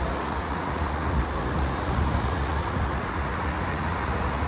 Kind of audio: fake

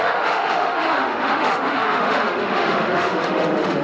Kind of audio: fake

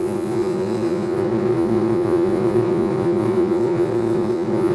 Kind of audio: fake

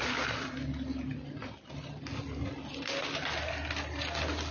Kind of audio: real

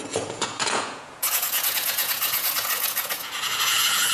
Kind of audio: fake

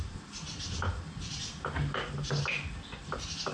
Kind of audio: real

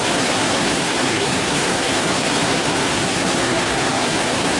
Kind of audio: fake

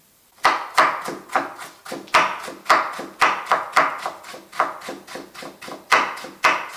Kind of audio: real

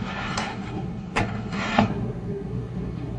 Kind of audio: fake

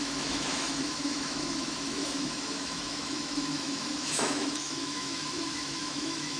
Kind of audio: fake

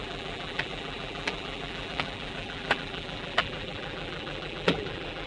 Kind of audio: fake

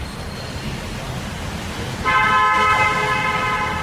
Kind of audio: real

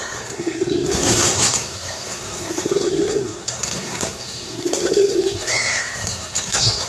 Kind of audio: fake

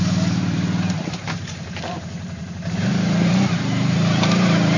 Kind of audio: fake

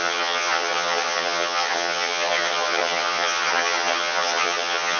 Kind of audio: fake